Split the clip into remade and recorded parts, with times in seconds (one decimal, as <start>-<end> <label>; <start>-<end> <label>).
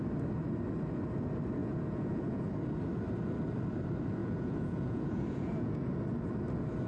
0.0-1.6 recorded; 1.6-2.5 remade; 2.5-4.2 recorded; 4.2-5.9 remade; 5.9-6.9 recorded